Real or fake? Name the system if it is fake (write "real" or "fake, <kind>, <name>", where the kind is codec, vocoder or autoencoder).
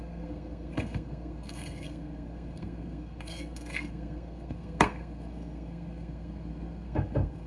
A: fake, codec, SNAC